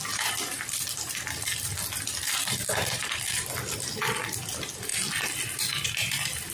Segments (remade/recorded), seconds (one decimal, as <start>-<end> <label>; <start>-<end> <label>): 0.0-4.9 remade; 4.9-5.6 recorded; 5.6-6.5 remade